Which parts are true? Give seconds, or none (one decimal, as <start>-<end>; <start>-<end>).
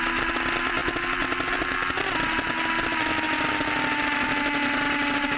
0.0-5.4